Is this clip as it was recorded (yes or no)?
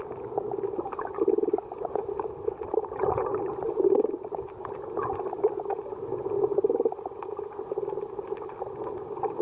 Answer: yes